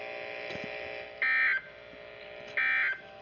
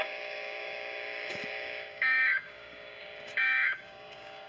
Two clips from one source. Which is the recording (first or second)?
first